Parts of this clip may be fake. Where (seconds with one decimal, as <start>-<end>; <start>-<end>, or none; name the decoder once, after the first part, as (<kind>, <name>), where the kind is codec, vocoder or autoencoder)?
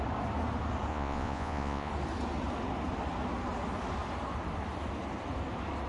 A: 0.9-1.9 (vocoder, Vocos)